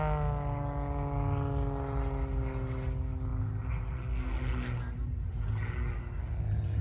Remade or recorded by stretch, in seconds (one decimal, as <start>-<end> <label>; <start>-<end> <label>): 0.0-6.8 recorded